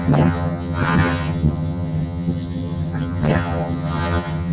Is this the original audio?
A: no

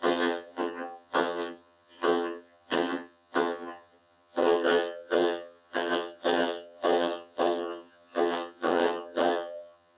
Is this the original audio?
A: no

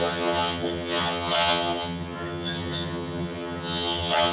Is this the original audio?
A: no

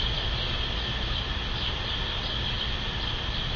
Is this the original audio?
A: yes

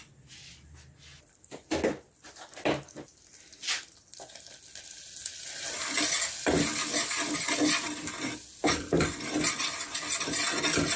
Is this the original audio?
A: yes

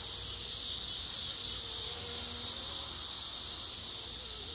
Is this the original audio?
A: yes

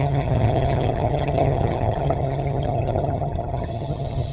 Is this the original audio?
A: no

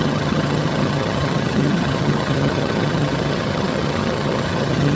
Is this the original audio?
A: no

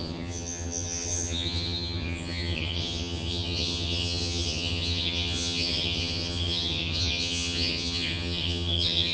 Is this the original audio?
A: no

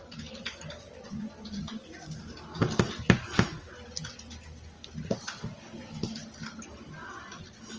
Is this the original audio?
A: yes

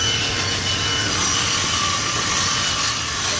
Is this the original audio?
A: yes